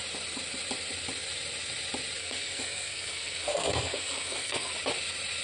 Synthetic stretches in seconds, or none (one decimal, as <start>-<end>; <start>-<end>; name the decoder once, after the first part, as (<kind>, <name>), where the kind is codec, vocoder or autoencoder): 2.2-4.7 (codec, SNAC)